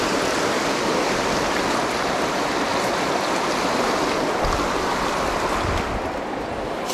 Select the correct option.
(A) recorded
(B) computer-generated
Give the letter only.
A